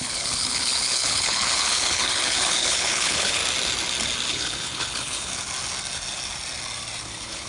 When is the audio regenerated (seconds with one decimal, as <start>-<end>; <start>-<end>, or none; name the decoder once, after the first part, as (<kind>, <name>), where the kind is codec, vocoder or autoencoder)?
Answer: 0.0-3.4 (codec, HILCodec); 4.3-5.3; 7.0-7.5